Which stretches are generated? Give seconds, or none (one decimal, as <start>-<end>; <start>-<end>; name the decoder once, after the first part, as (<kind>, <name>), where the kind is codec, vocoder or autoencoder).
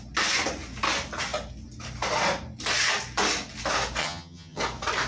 4.0-4.6 (vocoder, HiFi-GAN)